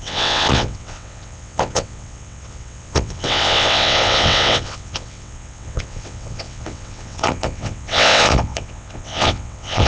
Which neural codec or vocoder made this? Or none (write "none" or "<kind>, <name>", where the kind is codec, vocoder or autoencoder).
vocoder, WaveNeXt